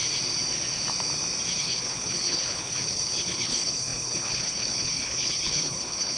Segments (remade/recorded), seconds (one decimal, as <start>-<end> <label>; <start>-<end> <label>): 0.0-1.6 recorded; 1.6-6.2 remade